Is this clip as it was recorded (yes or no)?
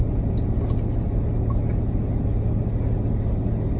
yes